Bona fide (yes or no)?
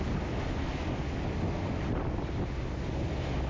yes